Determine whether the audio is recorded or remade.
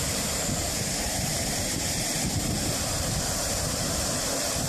remade